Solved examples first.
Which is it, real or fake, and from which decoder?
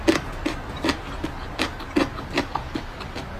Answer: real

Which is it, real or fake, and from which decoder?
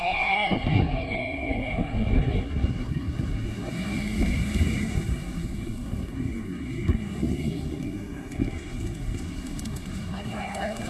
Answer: fake, codec, SNAC